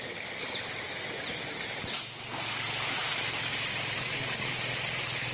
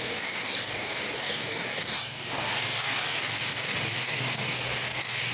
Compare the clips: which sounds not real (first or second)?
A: second